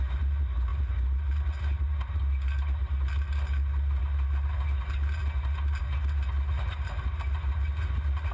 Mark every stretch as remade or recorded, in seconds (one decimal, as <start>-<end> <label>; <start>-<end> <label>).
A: 0.0-8.3 recorded